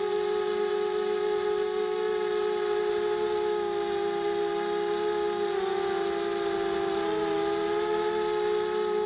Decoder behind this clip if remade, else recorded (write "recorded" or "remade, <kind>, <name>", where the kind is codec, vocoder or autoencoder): recorded